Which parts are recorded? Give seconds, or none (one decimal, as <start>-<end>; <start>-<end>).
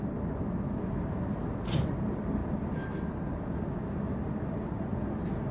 0.0-5.5